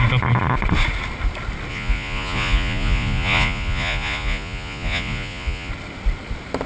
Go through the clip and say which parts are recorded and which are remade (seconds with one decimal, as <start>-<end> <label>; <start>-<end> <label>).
0.0-1.7 recorded; 1.7-5.7 remade; 5.7-6.7 recorded

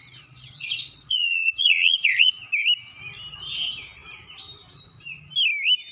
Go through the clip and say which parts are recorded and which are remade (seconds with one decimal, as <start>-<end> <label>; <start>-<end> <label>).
0.0-2.4 remade; 2.4-5.9 recorded

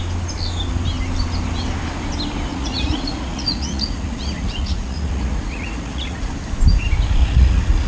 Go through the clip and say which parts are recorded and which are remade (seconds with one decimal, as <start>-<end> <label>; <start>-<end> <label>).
0.0-2.5 recorded; 2.5-6.3 remade; 6.3-7.2 recorded; 7.2-7.9 remade